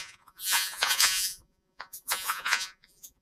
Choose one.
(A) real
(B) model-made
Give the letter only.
B